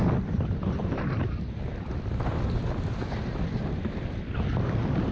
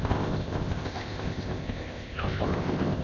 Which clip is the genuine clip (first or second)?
first